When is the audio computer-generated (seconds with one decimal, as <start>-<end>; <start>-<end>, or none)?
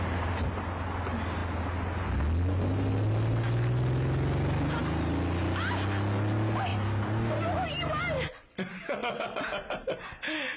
8.8-9.4